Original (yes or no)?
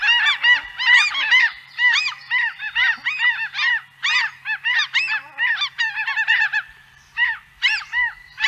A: no